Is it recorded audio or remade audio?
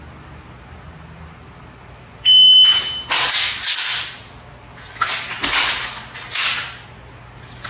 recorded